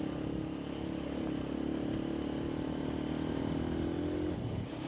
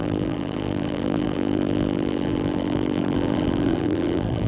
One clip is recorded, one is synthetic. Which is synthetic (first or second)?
second